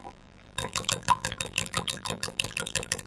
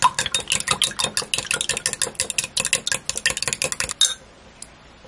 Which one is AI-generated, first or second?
first